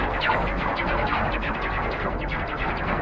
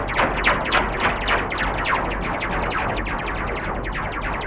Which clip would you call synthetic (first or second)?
first